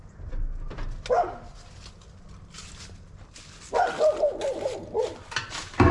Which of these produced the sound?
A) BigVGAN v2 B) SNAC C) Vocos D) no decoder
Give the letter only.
D